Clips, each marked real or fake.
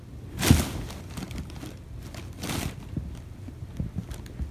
real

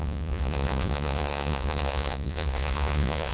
fake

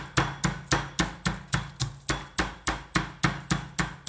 real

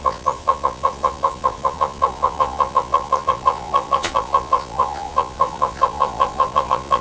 fake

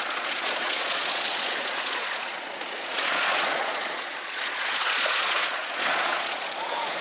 fake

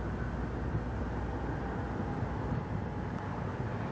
real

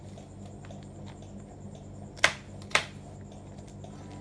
real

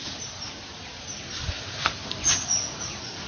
real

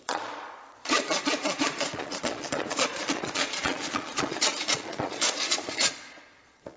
fake